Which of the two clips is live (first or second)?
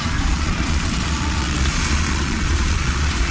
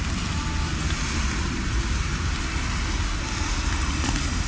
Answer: second